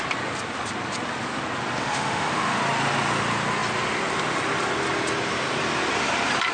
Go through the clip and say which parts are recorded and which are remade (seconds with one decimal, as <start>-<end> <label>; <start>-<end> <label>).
0.0-1.8 recorded; 1.8-2.6 remade; 2.6-6.5 recorded